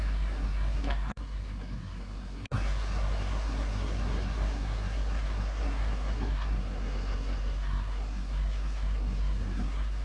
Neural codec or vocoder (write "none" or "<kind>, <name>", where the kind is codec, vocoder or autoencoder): codec, SNAC